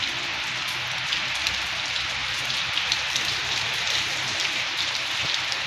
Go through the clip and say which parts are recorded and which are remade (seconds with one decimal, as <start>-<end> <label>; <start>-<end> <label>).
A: 0.0-2.2 recorded; 2.2-5.3 remade; 5.3-5.7 recorded